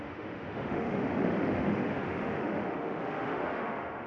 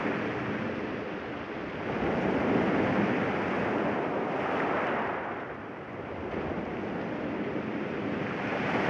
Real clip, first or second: second